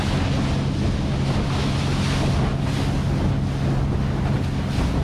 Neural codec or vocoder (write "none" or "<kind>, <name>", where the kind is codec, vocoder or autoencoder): none